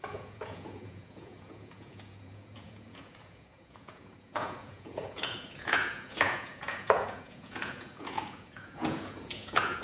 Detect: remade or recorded remade